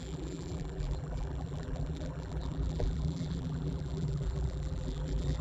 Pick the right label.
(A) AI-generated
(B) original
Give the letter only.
A